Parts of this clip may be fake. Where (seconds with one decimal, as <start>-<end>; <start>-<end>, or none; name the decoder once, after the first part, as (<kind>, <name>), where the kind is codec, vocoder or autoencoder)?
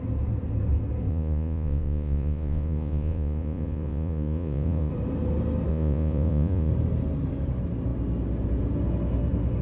1.1-4.9 (vocoder, Vocos); 5.7-6.7